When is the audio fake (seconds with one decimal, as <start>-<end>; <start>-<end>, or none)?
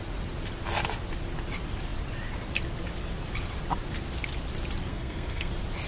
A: 4.9-5.5